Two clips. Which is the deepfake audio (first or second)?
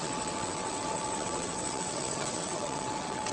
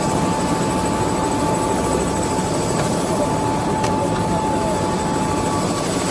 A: first